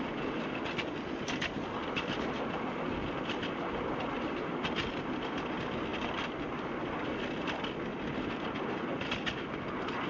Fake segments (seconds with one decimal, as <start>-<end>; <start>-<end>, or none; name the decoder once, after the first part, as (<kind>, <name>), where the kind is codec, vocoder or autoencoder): none